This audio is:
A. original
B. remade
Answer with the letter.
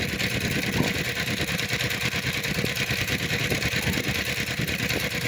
A